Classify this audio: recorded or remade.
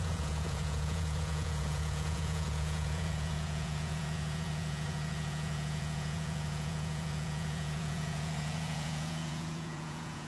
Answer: remade